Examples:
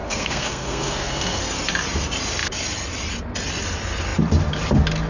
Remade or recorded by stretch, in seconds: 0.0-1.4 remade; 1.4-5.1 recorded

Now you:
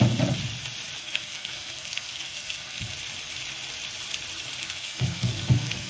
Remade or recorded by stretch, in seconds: 0.0-1.0 recorded; 1.0-2.9 remade; 2.9-4.6 recorded; 4.6-5.9 remade

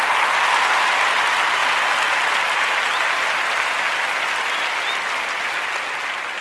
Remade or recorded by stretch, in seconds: 0.0-6.4 recorded

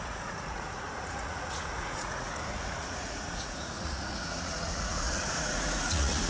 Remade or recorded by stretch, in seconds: 0.0-6.3 remade

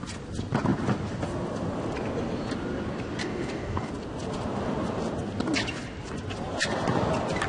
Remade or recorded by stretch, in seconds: 0.0-3.2 recorded; 3.2-3.9 remade; 3.9-7.5 recorded

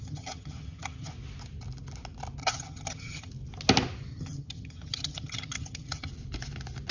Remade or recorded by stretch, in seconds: 0.0-1.1 remade; 1.1-2.4 recorded; 2.4-3.3 remade; 3.3-4.1 recorded; 4.1-6.1 remade; 6.1-6.9 recorded